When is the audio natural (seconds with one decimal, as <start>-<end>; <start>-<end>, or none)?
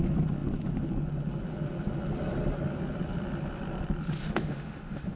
0.0-4.2